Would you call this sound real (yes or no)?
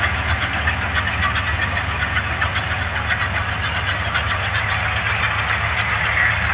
yes